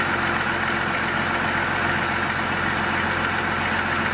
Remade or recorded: recorded